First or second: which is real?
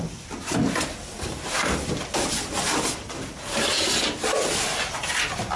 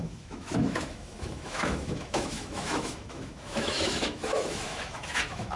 first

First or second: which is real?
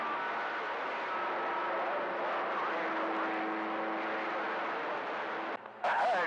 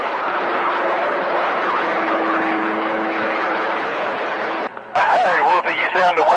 first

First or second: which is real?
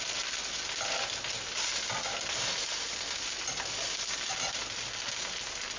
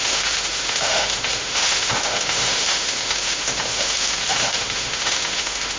first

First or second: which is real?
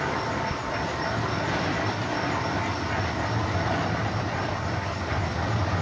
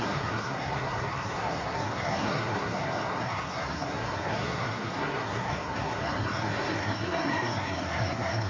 first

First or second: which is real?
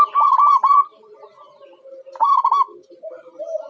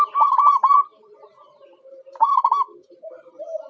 first